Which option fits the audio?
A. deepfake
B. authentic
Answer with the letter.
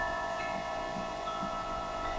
A